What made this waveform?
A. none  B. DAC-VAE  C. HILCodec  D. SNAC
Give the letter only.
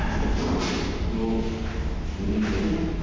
A